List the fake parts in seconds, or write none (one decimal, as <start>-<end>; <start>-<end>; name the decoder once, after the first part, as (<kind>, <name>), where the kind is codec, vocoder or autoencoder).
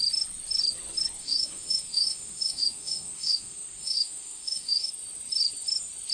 1.2-4.9 (autoencoder, DAC-VAE)